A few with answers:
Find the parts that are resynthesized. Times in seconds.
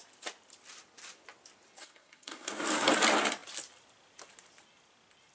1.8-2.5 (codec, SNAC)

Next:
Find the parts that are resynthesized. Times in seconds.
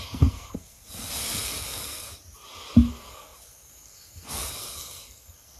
0.0-2.1 (codec, SNAC); 2.9-5.6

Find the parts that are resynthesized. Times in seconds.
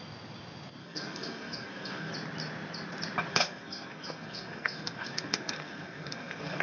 0.8-2.1 (codec, SNAC); 3.3-6.6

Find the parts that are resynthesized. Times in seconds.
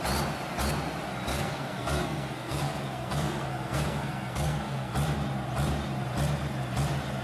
1.3-4.9 (codec, SNAC)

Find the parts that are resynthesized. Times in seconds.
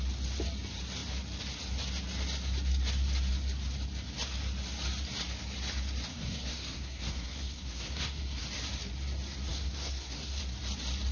6.1-8.4 (codec, SNAC); 9.5-10.4